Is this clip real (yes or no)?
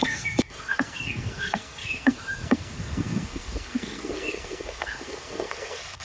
no